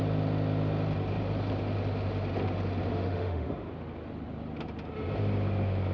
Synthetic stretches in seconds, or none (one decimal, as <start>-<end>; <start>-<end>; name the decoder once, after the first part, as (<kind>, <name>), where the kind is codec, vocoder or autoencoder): 2.9-3.7 (autoencoder, DAC-VAE)